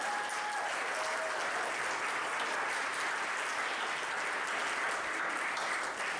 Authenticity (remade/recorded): recorded